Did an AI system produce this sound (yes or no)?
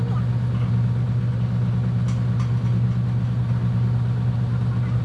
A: no